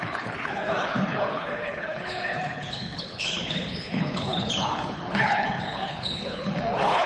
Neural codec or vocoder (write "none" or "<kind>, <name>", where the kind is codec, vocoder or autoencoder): codec, HILCodec